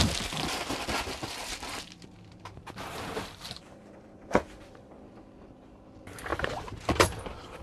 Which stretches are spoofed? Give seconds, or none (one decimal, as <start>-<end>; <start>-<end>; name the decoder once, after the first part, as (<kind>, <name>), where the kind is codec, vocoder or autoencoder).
1.4-4.2 (vocoder, BigVGAN v2); 6.3-7.6